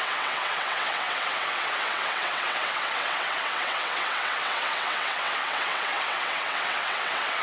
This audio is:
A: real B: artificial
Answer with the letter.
B